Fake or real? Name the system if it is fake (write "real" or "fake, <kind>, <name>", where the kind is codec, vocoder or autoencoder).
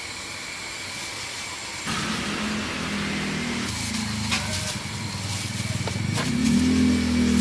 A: real